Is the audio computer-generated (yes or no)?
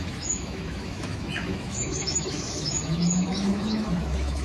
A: yes